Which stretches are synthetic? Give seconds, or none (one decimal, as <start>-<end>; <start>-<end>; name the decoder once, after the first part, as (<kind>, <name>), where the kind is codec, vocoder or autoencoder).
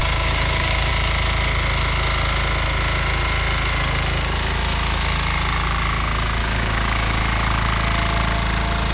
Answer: 0.0-0.9 (codec, DAC); 6.4-7.2